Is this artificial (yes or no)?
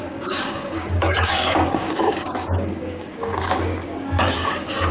yes